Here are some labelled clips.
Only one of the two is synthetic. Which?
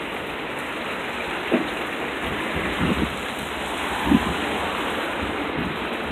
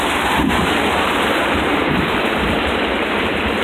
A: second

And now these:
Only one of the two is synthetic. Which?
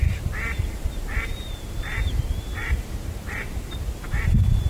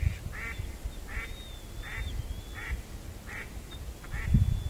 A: first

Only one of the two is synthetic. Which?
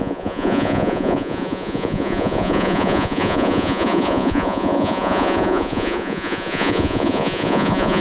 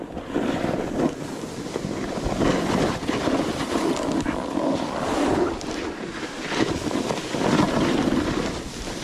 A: first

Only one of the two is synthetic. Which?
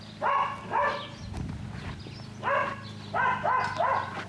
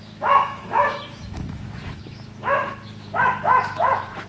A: second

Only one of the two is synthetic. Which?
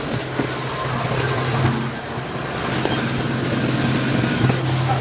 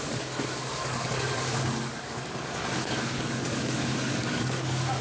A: second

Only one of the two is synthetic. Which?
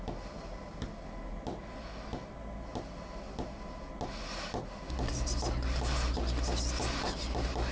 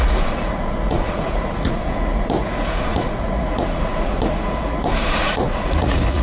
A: second